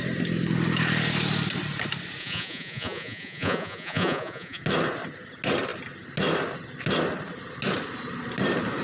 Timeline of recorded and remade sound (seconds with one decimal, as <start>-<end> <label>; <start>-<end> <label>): 0.0-2.2 recorded; 2.2-4.6 remade; 4.6-8.8 recorded